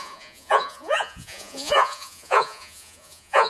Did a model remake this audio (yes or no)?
yes